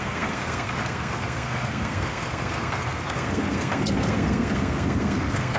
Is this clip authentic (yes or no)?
no